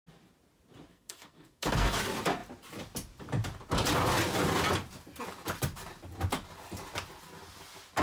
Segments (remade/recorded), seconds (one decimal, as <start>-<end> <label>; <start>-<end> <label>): 0.0-0.9 recorded; 0.9-2.0 remade; 2.0-8.0 recorded